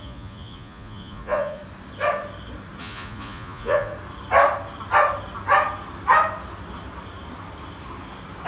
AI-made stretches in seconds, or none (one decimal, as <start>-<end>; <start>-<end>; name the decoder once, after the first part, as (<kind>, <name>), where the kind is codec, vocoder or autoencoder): 0.0-1.6 (vocoder, Vocos); 2.8-3.9